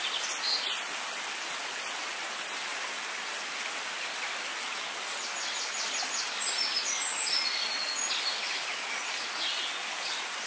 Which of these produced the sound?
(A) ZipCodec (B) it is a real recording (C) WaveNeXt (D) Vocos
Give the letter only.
B